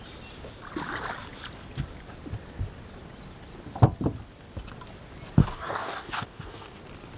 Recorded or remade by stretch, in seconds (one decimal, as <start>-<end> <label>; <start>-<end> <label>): 0.0-5.4 recorded; 5.4-6.8 remade; 6.8-7.2 recorded